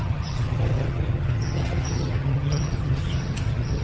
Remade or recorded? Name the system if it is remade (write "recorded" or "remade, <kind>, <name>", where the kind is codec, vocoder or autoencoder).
remade, vocoder, HiFi-GAN